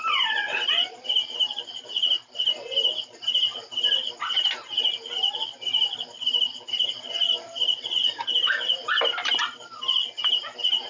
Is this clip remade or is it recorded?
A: recorded